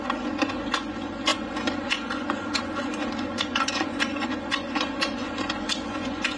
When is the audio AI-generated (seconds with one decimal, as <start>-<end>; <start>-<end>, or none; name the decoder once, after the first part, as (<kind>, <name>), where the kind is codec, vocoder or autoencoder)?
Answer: 0.0-6.4 (vocoder, Vocos)